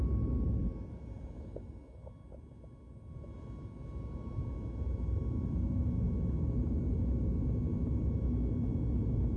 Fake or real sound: real